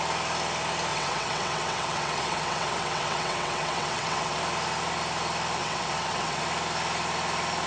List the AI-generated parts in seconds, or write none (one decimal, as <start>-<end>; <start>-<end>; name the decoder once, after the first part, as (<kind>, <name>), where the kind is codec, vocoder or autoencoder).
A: 0.9-4.4 (vocoder, WaveNeXt); 5.6-6.4